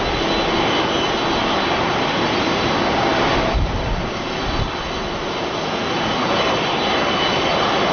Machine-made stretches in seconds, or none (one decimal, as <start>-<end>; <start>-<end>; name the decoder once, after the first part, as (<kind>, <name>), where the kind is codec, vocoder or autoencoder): none